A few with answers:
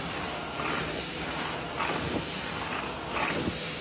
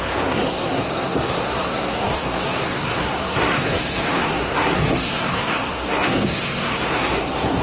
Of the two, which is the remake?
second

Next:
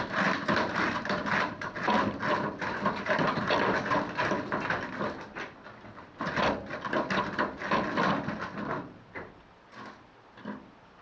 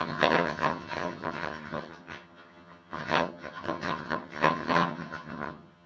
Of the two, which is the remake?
second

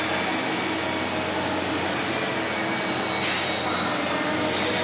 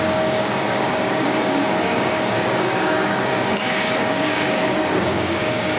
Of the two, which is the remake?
second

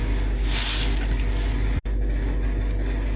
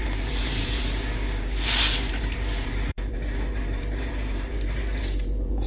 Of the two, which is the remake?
second